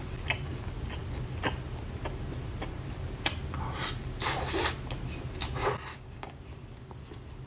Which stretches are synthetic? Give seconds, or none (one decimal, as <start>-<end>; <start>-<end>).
5.9-6.4